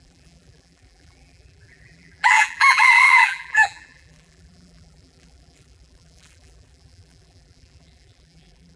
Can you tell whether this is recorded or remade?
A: remade